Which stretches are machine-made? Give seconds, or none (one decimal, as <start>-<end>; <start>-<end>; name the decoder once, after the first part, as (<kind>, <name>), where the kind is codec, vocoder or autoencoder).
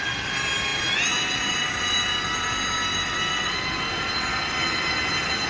none